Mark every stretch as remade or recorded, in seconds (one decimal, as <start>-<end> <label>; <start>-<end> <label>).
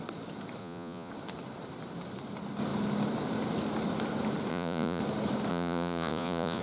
0.0-0.6 recorded; 0.6-1.1 remade; 1.1-4.5 recorded; 4.5-5.0 remade; 5.0-5.5 recorded; 5.5-6.6 remade